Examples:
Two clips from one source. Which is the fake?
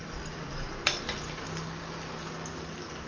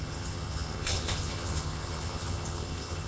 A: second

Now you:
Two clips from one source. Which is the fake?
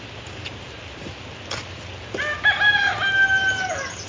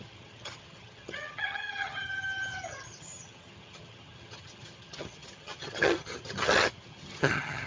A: second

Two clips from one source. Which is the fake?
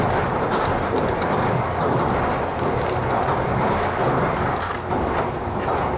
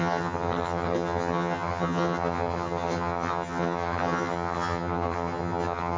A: second